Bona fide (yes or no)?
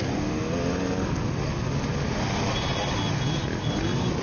yes